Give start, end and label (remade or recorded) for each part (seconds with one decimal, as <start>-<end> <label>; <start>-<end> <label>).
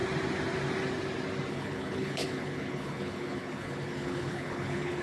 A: 0.0-1.5 recorded; 1.5-5.0 remade